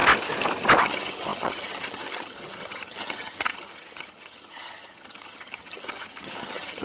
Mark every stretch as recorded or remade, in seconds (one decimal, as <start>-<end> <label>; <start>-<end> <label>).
0.0-0.8 recorded; 0.8-6.8 remade